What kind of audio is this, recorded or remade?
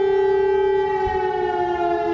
recorded